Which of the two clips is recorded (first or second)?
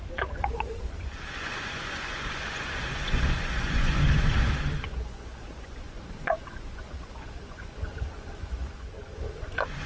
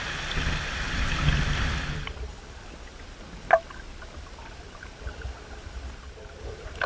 second